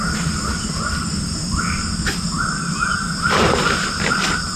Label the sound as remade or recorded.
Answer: recorded